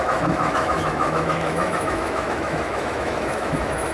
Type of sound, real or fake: fake